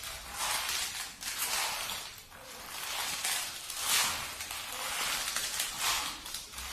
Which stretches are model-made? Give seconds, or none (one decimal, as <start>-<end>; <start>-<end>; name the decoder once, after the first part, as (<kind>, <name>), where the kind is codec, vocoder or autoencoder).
none